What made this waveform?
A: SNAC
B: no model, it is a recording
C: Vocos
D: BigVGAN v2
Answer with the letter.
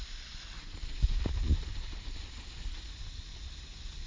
B